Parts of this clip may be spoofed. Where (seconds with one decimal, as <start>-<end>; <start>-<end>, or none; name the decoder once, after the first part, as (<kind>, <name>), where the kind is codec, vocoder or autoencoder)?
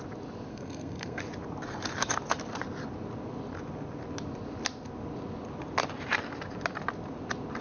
0.5-1.2 (codec, SNAC)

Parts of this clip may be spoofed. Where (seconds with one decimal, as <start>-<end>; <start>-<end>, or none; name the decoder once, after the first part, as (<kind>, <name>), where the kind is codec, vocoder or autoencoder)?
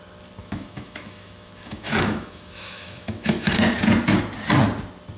0.4-3.5 (autoencoder, DAC-VAE)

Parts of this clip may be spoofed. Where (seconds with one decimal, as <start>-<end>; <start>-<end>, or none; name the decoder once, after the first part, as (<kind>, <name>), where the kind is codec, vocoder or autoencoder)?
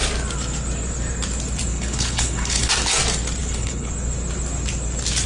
1.7-2.7 (codec, HILCodec); 3.4-3.9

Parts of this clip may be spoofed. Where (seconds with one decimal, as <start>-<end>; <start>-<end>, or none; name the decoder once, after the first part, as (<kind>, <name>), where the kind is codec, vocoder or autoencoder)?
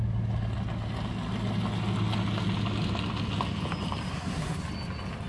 4.1-4.6 (codec, SNAC)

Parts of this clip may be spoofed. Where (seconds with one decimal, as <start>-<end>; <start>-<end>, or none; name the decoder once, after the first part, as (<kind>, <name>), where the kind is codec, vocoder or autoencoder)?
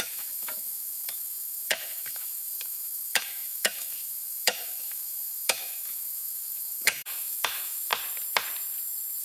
0.0-7.9 (autoencoder, DAC-VAE)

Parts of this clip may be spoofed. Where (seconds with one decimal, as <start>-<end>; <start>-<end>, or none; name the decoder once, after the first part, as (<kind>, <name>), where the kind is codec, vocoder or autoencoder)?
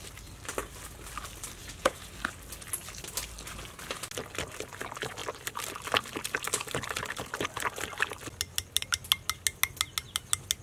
1.6-2.1 (vocoder, Vocos)